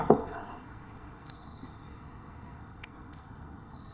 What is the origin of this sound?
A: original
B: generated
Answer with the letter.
B